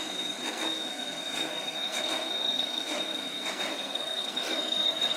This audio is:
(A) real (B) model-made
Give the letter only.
B